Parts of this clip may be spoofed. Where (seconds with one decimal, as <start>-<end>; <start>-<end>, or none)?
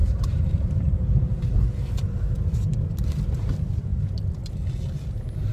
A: 0.0-0.9; 2.7-3.5